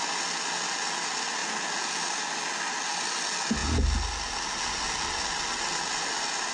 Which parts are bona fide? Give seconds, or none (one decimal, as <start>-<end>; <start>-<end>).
0.0-6.5